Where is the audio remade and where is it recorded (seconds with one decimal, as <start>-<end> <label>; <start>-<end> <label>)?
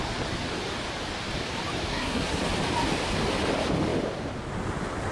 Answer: 0.0-1.9 recorded; 1.9-2.4 remade; 2.4-5.1 recorded